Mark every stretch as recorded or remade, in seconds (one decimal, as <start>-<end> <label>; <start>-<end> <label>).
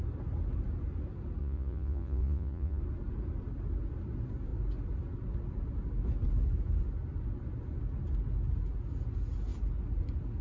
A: 0.0-1.4 recorded; 1.4-2.8 remade; 2.8-10.4 recorded